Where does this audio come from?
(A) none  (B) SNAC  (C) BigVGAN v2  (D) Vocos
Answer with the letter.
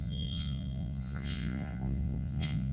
D